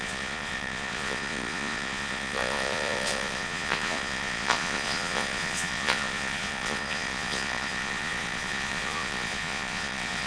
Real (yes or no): no